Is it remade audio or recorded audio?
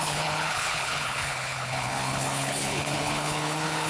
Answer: remade